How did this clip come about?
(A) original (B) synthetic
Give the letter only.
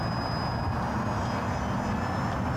A